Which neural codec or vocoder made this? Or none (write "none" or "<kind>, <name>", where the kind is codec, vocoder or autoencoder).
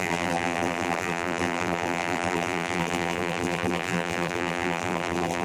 vocoder, BigVGAN v2